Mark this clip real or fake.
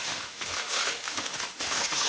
fake